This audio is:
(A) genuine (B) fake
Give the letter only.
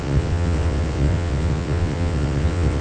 B